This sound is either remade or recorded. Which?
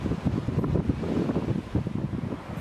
remade